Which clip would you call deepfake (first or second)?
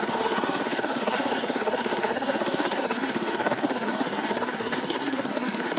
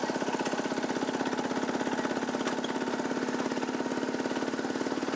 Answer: first